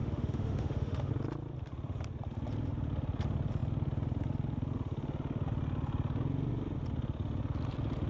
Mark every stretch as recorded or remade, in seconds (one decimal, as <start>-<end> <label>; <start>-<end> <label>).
0.0-1.1 remade; 1.1-8.1 recorded